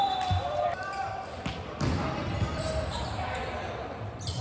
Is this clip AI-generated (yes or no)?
yes